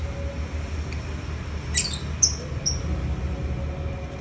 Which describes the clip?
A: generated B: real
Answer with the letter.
B